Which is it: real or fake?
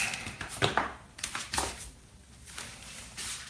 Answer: fake